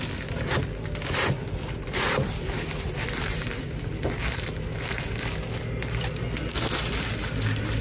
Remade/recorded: recorded